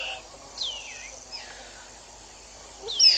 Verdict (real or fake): real